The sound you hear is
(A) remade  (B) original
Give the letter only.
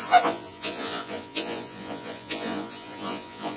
A